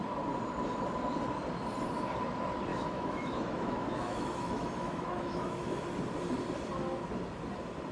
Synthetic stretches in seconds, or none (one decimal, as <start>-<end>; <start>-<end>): 2.7-5.8